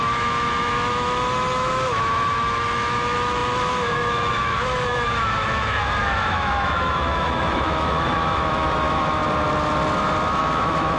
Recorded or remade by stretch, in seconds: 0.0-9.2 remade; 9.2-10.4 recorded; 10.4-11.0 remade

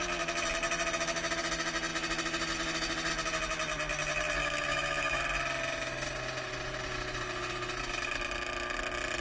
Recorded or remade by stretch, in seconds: 0.0-4.4 recorded; 4.4-5.2 remade; 5.2-9.2 recorded

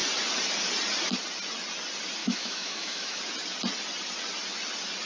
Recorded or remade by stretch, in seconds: 0.0-2.2 recorded; 2.2-3.2 remade; 3.2-5.1 recorded

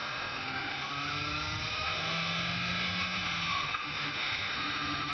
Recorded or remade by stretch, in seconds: 0.0-0.9 remade; 0.9-1.7 recorded; 1.7-5.1 remade

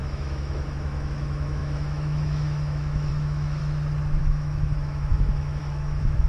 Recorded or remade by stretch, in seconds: 0.0-3.6 remade; 3.6-4.2 recorded; 4.2-6.3 remade

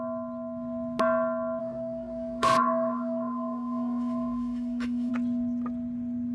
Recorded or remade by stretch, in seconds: 0.0-1.6 recorded; 1.6-5.1 remade; 5.1-6.3 recorded